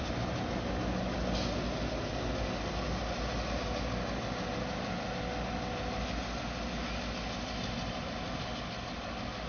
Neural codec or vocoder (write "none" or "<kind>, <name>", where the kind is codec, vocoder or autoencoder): none